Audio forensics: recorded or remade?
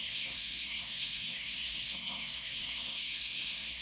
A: remade